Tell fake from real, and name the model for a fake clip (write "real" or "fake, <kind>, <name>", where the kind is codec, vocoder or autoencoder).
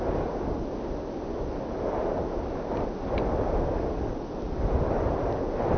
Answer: real